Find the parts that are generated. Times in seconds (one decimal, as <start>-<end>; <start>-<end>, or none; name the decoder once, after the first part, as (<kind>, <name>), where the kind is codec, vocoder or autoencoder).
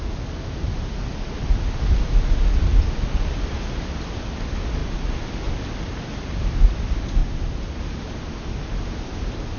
none